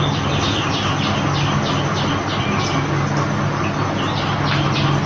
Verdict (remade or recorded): recorded